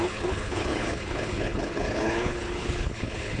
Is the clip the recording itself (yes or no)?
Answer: no